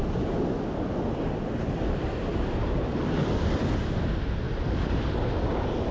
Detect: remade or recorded recorded